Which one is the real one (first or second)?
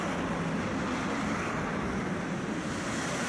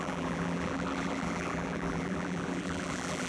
first